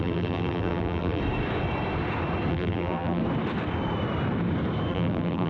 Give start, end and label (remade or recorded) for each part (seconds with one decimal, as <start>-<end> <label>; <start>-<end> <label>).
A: 0.0-1.2 remade; 1.2-2.5 recorded; 2.5-3.2 remade; 3.2-4.9 recorded; 4.9-5.5 remade